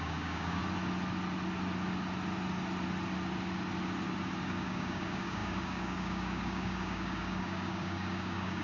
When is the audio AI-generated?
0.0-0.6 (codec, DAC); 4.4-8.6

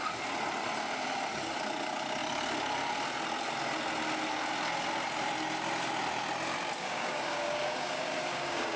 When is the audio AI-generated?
6.8-8.8 (codec, DAC)

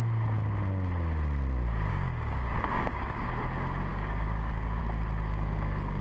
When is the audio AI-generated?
1.9-3.3 (codec, DAC); 3.9-4.8; 5.3-6.0

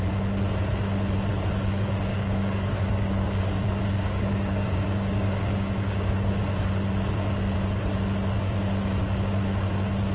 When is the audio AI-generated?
2.1-6.3 (codec, DAC)

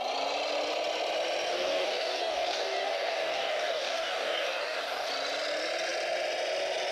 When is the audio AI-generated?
1.5-5.1 (codec, DAC)

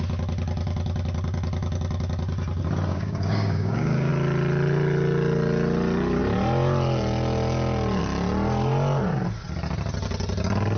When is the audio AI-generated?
2.9-4.1 (codec, DAC)